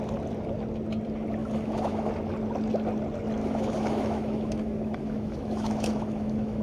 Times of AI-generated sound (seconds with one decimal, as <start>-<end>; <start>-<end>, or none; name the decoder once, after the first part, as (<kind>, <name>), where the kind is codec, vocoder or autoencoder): 1.4-2.1 (autoencoder, DAC-VAE); 3.4-6.6